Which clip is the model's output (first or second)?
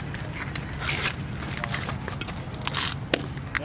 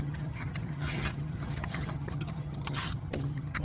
second